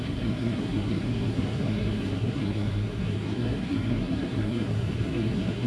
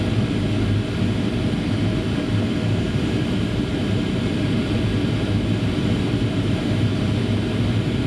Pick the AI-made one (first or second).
first